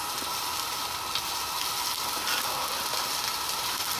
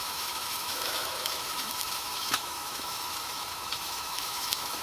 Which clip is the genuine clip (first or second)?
first